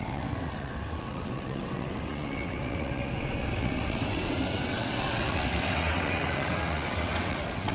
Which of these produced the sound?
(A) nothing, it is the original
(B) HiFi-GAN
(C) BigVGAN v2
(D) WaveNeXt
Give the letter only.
D